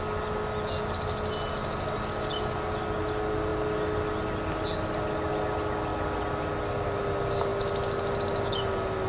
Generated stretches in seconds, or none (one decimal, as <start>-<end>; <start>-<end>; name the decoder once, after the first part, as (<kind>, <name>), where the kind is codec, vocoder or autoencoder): none